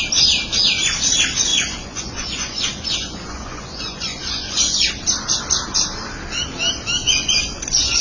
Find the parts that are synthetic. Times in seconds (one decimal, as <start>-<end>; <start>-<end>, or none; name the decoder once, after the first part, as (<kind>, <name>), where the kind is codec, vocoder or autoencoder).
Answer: 1.5-4.9 (vocoder, Vocos); 7.0-8.0